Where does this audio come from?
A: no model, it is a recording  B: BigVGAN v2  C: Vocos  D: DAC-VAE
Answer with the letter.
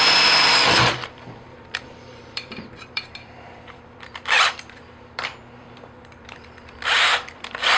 B